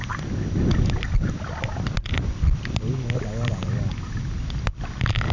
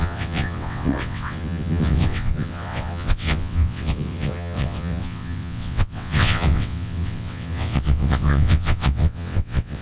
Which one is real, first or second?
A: first